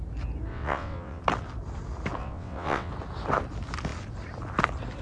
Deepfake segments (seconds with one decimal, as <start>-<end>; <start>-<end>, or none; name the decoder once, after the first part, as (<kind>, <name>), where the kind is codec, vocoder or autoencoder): 0.5-1.2 (vocoder, WaveNeXt); 2.2-2.9